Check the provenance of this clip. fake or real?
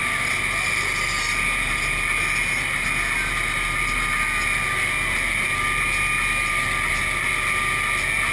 real